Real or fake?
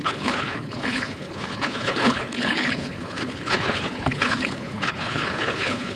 fake